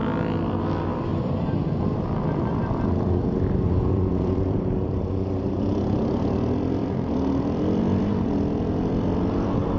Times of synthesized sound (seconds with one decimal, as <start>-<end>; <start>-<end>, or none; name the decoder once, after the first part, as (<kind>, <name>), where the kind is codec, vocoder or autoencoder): 1.1-5.0 (vocoder, BigVGAN v2); 6.8-7.8